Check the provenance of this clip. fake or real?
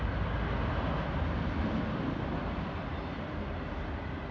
real